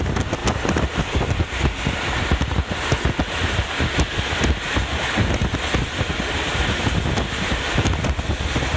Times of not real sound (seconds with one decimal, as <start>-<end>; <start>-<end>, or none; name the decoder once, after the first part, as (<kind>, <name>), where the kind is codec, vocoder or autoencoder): none